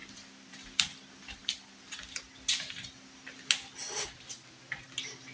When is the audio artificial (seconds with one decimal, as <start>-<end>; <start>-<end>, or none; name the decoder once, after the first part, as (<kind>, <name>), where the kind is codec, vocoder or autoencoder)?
none